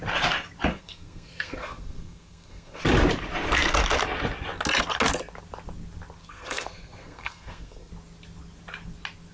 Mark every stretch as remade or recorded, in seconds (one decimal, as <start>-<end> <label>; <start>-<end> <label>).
0.0-0.7 recorded; 0.7-2.8 remade; 2.8-6.2 recorded; 6.2-7.9 remade; 7.9-9.3 recorded